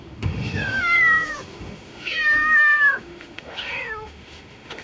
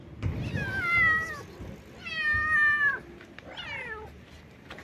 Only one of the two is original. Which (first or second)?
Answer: second